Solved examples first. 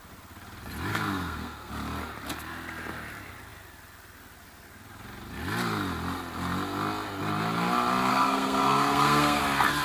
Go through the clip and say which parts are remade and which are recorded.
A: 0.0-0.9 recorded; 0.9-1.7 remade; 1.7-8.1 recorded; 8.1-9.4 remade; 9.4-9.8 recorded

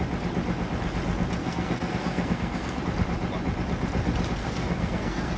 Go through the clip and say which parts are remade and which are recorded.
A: 0.0-1.4 recorded; 1.4-2.8 remade; 2.8-4.4 recorded; 4.4-5.4 remade